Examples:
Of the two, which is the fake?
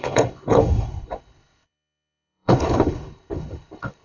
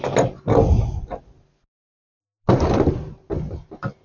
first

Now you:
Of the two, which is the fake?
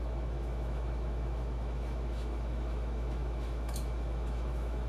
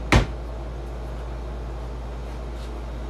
first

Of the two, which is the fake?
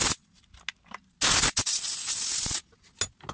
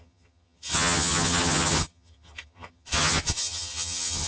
second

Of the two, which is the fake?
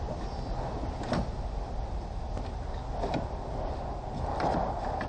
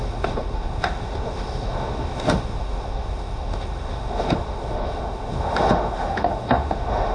second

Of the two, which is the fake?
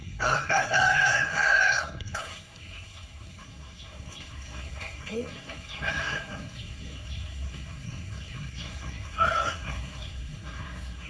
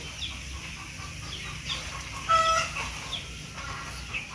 first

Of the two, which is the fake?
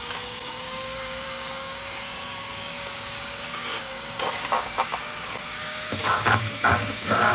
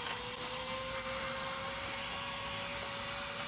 first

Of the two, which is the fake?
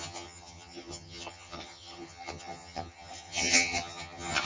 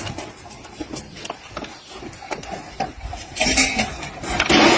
first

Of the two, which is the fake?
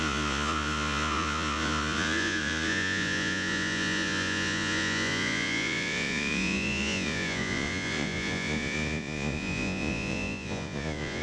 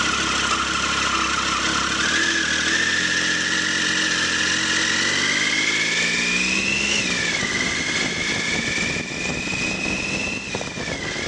first